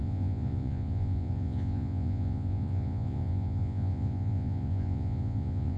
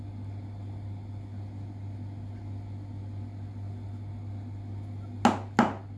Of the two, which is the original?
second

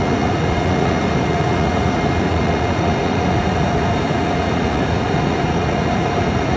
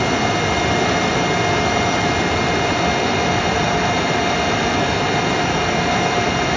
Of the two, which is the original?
second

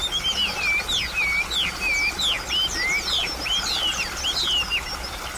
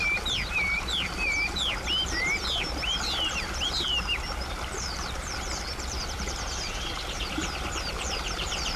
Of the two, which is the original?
first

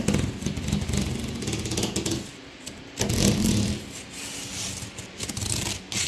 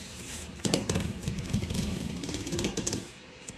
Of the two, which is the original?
first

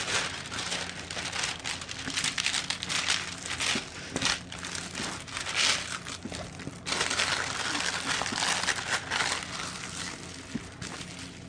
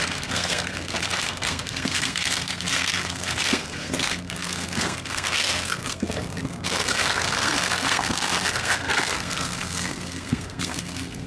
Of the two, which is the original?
first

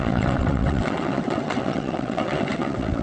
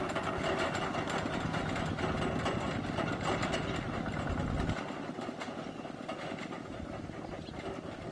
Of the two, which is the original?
second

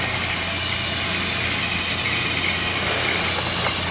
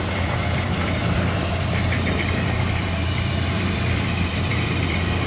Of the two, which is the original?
first